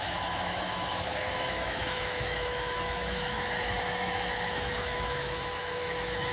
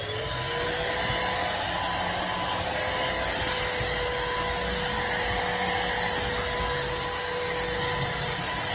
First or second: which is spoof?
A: first